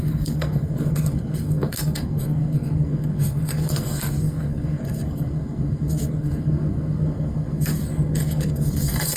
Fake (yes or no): yes